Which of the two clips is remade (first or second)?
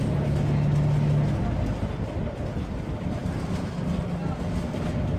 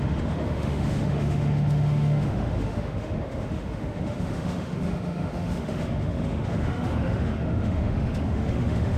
second